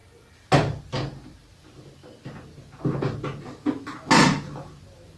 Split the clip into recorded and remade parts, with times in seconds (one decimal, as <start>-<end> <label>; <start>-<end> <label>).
0.0-5.2 recorded